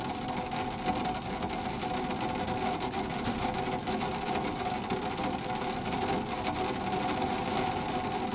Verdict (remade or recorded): recorded